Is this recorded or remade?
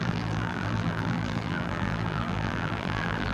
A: remade